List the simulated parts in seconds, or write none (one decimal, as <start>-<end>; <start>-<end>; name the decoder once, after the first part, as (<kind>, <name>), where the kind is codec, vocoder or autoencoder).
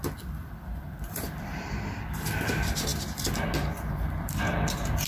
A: 0.0-2.9 (vocoder, BigVGAN v2); 3.9-5.1